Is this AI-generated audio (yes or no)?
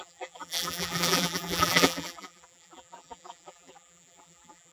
yes